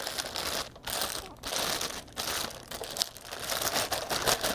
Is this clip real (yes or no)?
yes